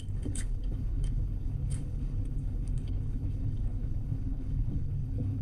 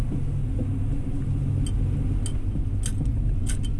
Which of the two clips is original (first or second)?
second